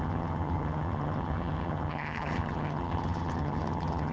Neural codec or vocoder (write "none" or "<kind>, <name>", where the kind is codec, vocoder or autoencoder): vocoder, HiFi-GAN